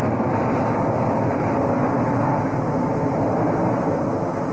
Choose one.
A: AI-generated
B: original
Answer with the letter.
B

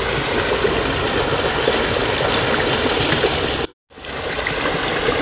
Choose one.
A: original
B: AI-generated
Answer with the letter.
A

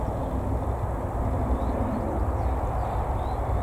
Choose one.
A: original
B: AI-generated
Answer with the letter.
A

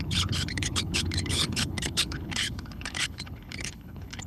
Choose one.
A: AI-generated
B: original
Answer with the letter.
A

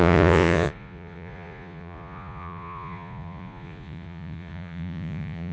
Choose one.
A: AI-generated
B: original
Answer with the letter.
A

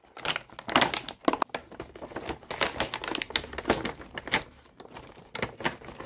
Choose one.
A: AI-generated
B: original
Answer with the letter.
B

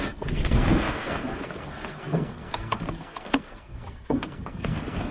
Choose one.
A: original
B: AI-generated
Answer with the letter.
B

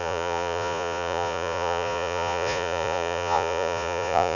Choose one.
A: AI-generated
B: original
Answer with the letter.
A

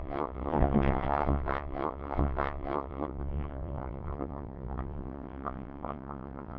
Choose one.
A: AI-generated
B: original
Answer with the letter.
A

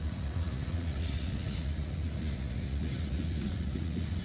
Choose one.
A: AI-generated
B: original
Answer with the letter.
A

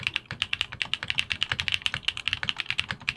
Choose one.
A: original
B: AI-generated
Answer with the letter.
A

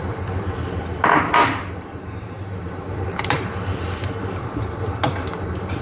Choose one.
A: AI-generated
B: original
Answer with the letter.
A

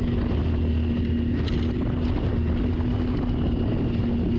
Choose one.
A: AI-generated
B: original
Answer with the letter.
B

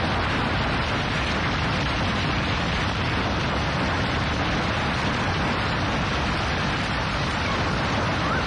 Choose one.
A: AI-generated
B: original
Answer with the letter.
B